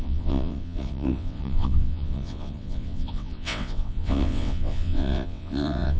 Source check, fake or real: fake